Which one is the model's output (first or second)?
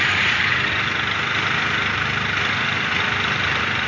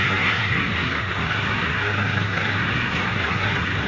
second